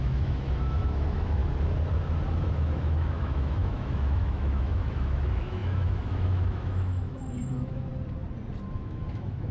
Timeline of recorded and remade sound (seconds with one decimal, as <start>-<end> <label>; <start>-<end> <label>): 0.0-1.4 remade; 1.4-2.4 recorded; 2.4-7.9 remade; 7.9-8.7 recorded; 8.7-9.5 remade